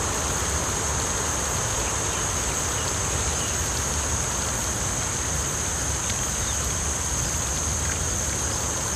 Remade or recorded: recorded